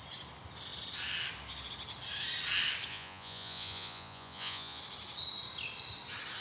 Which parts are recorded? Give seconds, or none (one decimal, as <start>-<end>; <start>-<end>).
0.0-2.9; 4.8-6.4